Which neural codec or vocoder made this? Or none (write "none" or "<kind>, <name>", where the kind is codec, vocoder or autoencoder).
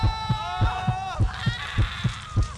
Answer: none